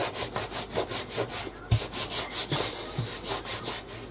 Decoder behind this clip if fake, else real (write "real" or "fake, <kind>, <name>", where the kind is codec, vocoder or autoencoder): real